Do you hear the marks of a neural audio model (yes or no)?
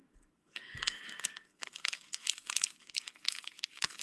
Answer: yes